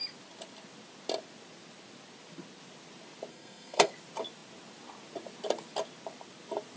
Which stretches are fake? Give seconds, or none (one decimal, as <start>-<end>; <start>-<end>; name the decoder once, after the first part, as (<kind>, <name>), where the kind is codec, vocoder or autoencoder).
3.3-3.9 (codec, SNAC)